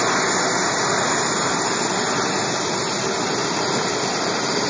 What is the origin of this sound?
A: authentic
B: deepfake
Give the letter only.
A